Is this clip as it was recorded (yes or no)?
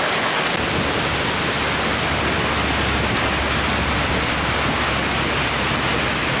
yes